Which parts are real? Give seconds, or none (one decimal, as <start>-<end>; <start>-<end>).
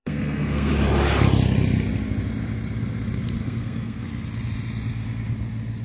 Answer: 0.7-3.4; 4.1-5.8